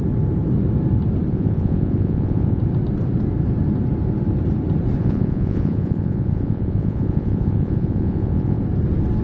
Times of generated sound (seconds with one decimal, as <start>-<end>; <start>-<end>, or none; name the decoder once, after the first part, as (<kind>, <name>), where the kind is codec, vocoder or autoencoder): 1.3-2.6 (vocoder, Vocos); 5.0-8.6